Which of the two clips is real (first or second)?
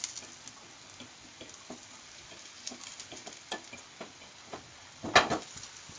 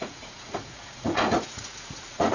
first